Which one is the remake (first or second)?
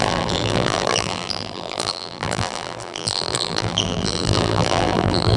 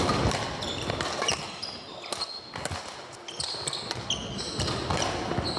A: first